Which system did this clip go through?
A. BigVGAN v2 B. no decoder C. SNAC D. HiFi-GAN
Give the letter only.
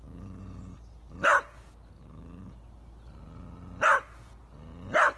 B